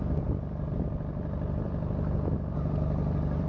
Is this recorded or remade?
remade